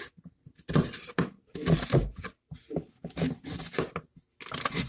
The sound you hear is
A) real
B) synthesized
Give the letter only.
A